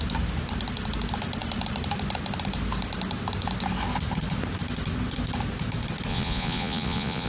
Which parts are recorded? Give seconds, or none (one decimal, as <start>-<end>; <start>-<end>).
0.0-6.1